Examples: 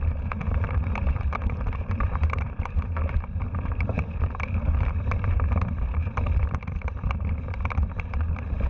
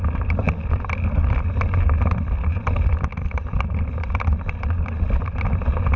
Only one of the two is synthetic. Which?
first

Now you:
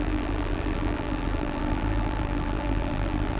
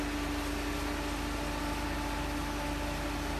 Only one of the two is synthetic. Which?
first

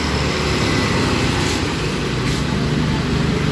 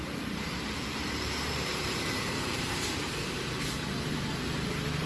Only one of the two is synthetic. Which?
second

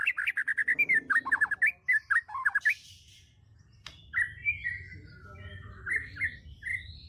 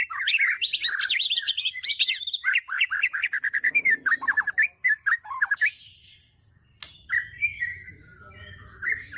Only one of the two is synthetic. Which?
second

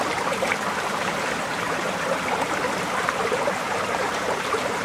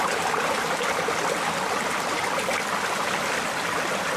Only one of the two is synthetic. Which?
first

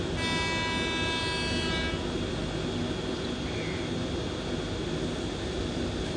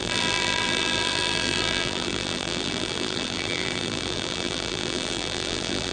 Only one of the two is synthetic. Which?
second